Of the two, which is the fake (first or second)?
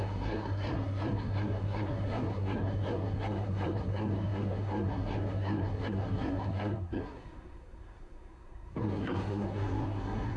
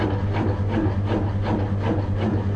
first